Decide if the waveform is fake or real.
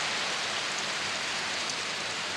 fake